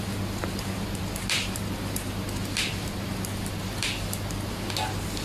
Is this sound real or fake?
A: real